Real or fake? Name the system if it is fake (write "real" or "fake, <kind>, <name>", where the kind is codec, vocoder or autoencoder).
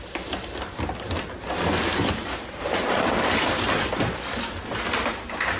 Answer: real